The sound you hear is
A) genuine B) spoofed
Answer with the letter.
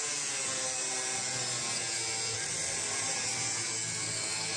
A